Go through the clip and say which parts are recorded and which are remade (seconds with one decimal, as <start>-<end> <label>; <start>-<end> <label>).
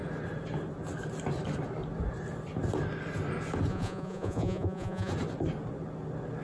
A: 0.0-3.7 recorded; 3.7-5.1 remade; 5.1-6.4 recorded